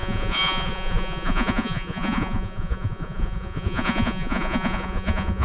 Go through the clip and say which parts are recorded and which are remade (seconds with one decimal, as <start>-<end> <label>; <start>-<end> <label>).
0.0-5.4 remade